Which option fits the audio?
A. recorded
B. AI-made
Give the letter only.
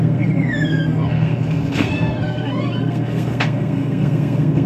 B